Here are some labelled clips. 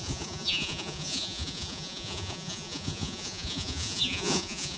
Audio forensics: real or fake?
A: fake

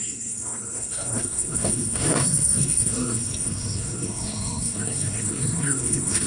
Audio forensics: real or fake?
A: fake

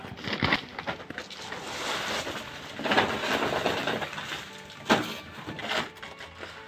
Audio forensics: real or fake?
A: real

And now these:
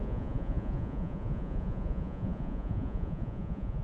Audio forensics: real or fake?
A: fake